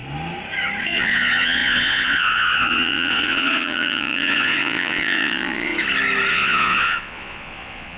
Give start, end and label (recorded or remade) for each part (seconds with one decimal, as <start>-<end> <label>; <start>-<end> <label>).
0.0-0.8 recorded; 0.8-5.7 remade; 5.7-6.3 recorded; 6.3-8.0 remade